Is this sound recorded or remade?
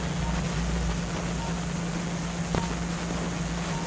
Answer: recorded